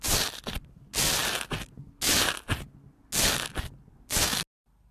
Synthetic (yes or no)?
no